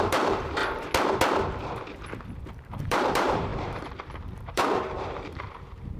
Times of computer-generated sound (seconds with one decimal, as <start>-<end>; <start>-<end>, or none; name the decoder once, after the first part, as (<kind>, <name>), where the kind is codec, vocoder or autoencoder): 0.0-0.6 (vocoder, BigVGAN v2); 2.5-6.0

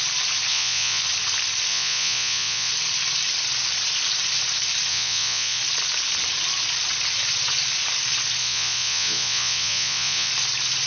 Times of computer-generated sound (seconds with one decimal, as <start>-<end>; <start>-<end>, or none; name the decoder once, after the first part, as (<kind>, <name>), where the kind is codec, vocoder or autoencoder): 0.5-1.0 (vocoder, Vocos); 1.7-2.7; 4.9-5.6; 8.4-10.3